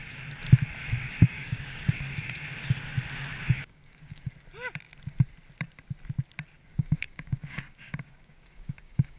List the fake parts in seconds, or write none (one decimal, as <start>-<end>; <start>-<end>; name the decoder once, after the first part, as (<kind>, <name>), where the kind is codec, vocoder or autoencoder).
0.8-1.9 (codec, DAC); 3.3-4.3; 6.7-9.2